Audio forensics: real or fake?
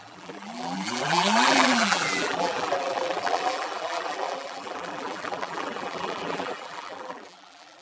fake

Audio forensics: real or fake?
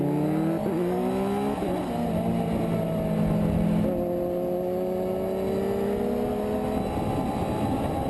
real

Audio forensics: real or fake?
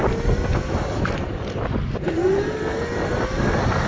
real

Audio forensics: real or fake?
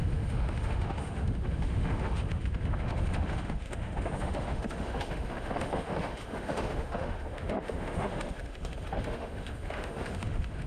fake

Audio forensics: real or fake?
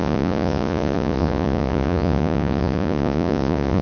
fake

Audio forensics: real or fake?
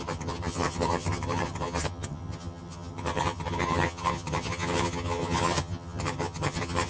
fake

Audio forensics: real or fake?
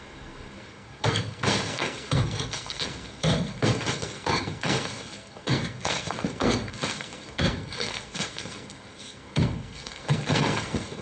fake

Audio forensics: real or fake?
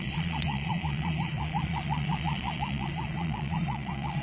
fake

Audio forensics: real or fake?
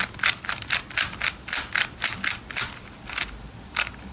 real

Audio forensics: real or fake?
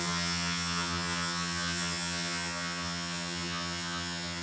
fake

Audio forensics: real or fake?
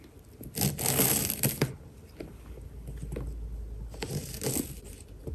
real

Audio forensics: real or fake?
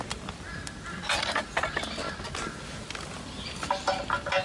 real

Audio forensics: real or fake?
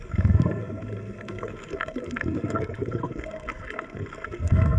fake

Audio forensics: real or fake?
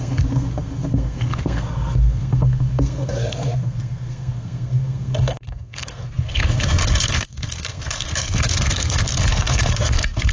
fake